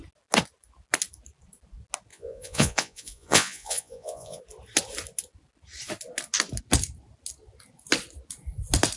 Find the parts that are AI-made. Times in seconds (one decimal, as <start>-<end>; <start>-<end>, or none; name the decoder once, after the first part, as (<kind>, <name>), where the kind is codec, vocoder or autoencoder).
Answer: 2.1-4.4 (vocoder, Vocos)